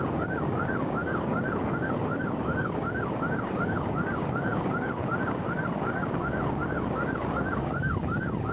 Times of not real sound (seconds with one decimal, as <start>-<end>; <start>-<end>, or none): 0.0-8.5